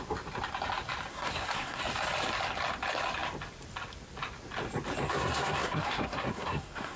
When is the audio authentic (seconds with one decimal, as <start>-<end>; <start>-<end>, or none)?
0.0-1.1; 1.8-5.1